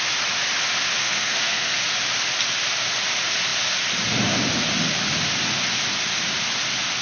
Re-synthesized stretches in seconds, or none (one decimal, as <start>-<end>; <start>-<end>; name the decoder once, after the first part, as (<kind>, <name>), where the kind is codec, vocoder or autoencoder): 1.0-1.8 (codec, SNAC)